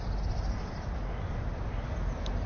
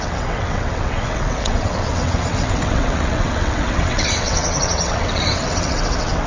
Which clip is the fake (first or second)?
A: second